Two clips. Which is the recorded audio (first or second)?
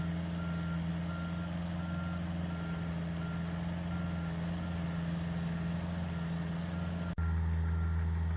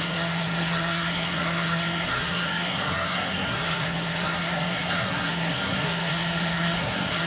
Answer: first